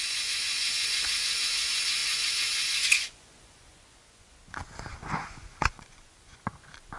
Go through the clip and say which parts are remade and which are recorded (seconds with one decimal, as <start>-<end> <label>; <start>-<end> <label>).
0.0-7.0 remade